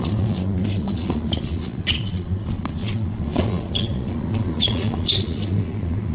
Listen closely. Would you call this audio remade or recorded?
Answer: remade